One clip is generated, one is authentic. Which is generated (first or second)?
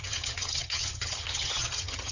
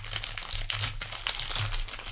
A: first